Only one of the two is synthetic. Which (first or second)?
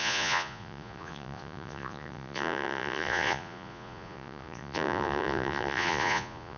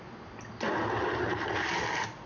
first